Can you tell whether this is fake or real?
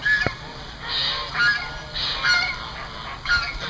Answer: real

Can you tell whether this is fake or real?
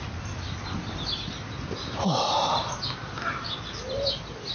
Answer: real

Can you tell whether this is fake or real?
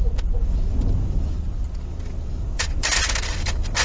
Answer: fake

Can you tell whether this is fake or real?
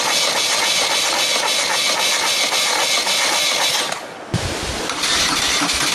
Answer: real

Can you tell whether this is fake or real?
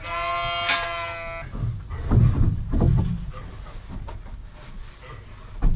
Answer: real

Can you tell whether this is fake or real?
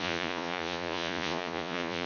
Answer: fake